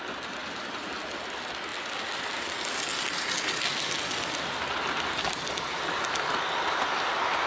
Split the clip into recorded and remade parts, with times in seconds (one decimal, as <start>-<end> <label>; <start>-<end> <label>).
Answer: 0.0-0.4 recorded; 0.4-0.9 remade; 0.9-7.5 recorded